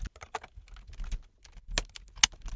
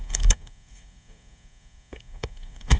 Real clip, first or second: first